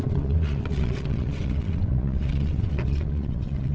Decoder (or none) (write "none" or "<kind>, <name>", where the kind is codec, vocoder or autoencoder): vocoder, WaveNeXt